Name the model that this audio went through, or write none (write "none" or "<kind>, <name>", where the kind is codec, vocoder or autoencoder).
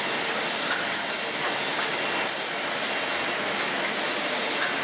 none